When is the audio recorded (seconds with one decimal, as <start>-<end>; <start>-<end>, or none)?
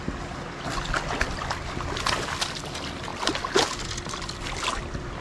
0.0-3.1